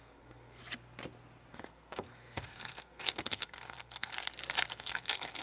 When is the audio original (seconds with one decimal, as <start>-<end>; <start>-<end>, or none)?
0.6-1.5; 4.1-4.7